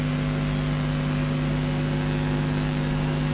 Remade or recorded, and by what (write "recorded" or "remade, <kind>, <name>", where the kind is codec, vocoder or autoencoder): recorded